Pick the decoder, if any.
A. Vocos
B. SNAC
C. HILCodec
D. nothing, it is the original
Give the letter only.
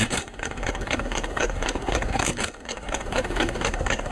B